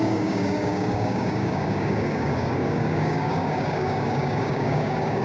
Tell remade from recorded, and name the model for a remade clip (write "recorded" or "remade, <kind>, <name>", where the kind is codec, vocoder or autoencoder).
remade, codec, DAC